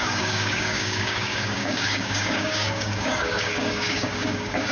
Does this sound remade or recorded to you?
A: remade